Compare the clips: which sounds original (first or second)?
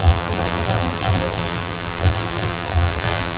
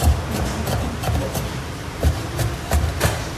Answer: second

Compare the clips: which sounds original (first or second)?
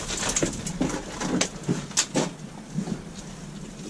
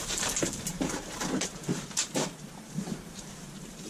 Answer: first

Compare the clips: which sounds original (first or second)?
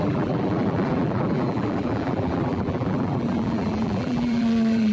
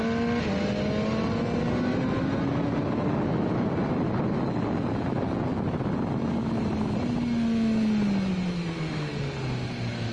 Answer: second